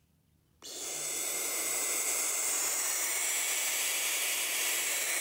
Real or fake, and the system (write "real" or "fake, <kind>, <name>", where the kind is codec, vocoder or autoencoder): real